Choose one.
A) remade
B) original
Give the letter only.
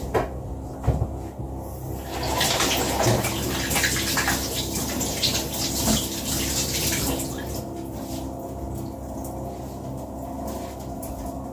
B